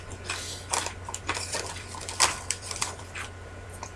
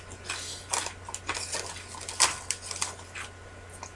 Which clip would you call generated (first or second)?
first